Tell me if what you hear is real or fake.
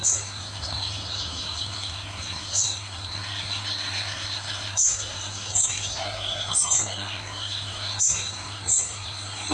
fake